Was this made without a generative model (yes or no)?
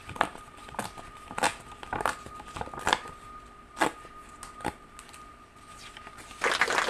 yes